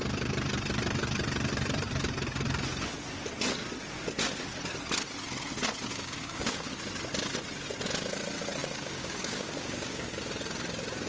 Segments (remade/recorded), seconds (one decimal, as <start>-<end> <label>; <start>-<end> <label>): 0.0-5.9 recorded; 5.9-6.7 remade; 6.7-8.6 recorded; 8.6-10.2 remade; 10.2-11.1 recorded